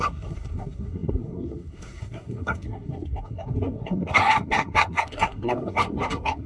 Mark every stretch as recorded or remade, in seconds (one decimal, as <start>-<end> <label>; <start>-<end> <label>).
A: 0.0-6.5 remade